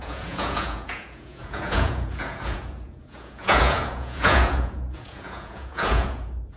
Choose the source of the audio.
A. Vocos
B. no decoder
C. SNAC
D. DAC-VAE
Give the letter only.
A